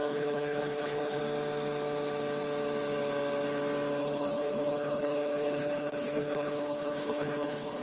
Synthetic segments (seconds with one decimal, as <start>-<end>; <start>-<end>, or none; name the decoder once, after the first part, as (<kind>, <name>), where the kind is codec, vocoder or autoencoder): 0.0-1.2 (codec, HILCodec); 4.0-7.8